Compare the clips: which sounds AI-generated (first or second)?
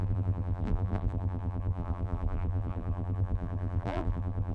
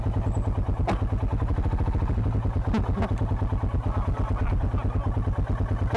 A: first